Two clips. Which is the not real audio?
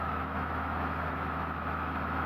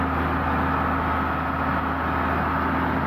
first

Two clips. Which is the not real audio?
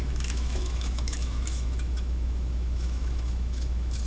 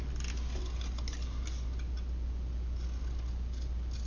first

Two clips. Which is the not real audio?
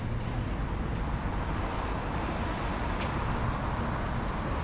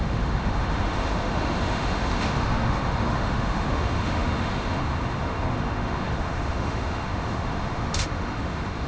second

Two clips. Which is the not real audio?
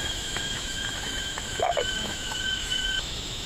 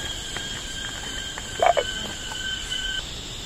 first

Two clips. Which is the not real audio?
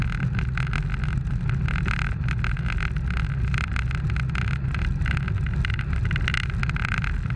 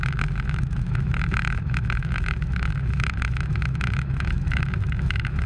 second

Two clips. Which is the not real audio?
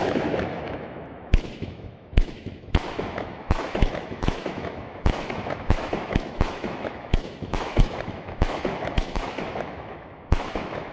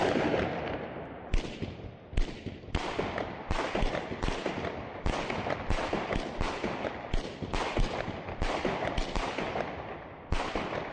first